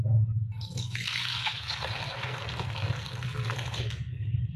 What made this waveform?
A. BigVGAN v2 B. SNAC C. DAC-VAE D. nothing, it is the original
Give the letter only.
B